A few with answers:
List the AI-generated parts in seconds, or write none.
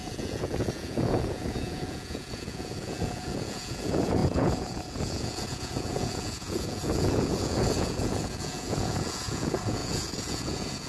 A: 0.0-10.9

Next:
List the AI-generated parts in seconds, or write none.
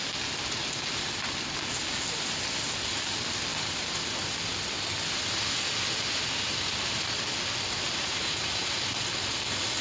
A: 8.0-8.8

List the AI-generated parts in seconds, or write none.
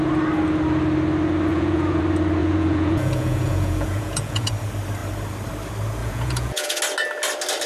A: 1.5-2.0; 2.4-4.5; 6.0-6.8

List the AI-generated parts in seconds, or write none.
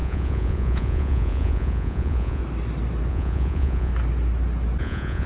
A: 0.0-2.4; 3.1-3.9; 4.8-5.3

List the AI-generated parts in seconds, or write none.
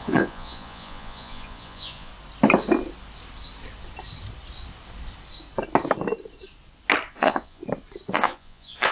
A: 0.0-2.1; 7.1-7.6; 8.1-8.9